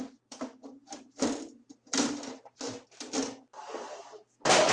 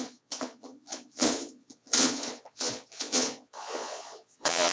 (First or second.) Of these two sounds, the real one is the first